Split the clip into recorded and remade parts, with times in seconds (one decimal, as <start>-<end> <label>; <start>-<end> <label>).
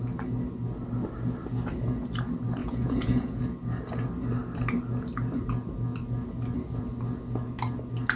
0.0-2.6 recorded; 2.6-3.4 remade; 3.4-8.2 recorded